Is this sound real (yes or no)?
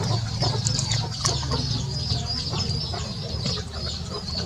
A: yes